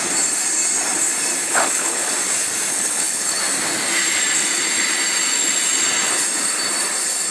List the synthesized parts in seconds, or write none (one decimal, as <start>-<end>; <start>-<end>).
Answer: 1.4-2.1; 2.7-3.4